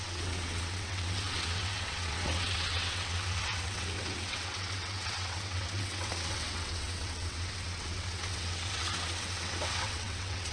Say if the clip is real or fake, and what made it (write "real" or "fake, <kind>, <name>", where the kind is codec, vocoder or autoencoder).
fake, vocoder, WaveNeXt